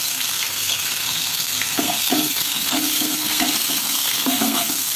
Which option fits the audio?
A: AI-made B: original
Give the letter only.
A